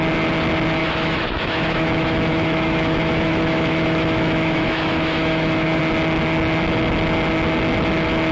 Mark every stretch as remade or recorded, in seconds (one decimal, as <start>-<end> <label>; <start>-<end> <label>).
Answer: 0.0-0.8 recorded; 0.8-5.8 remade; 5.8-8.3 recorded